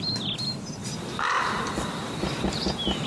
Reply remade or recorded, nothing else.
recorded